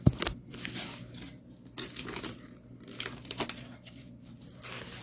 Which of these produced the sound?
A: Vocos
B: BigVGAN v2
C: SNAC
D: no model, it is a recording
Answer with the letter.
D